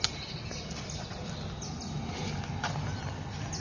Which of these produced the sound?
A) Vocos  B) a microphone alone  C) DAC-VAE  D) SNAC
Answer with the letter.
B